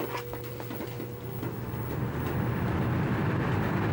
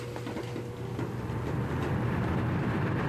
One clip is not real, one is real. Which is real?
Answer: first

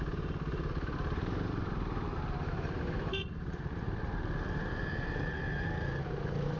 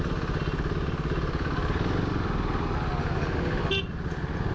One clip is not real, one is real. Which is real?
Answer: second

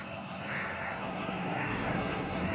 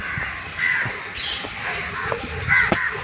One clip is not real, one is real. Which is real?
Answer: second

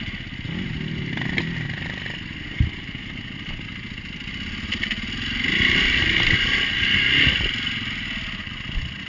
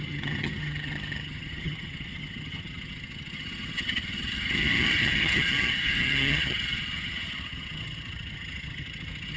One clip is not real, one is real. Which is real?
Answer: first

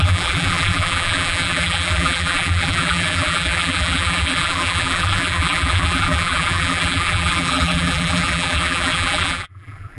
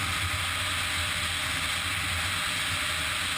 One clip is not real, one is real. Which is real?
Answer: second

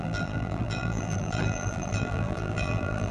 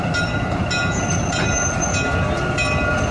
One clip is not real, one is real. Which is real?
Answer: second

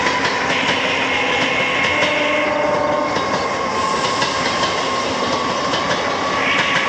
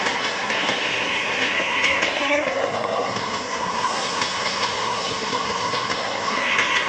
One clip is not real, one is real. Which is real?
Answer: first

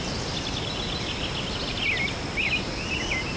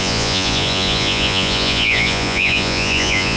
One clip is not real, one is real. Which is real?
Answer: first